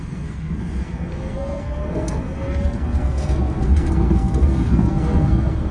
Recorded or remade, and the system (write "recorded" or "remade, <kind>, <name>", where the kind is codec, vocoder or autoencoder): remade, codec, SNAC